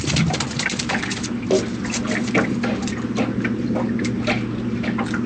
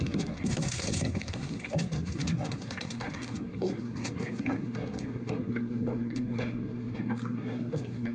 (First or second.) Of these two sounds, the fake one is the second